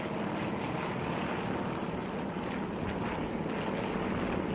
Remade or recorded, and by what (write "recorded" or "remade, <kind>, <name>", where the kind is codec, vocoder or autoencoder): recorded